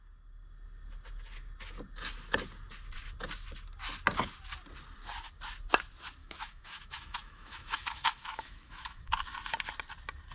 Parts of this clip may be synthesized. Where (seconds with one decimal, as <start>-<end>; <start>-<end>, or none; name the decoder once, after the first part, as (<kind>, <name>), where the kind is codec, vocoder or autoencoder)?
6.2-9.1 (autoencoder, DAC-VAE)